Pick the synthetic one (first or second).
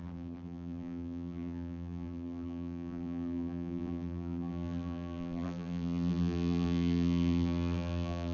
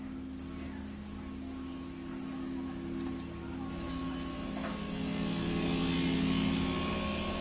first